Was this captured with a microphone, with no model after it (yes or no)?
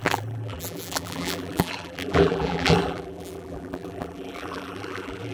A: no